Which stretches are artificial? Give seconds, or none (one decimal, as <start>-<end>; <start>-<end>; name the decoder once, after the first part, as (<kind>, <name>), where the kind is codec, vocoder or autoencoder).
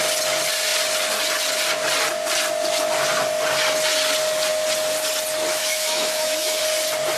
5.6-6.6 (autoencoder, DAC-VAE)